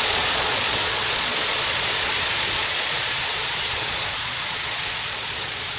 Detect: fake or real fake